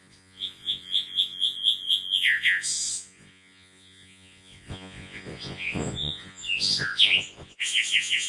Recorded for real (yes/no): no